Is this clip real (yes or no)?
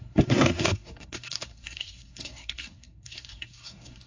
no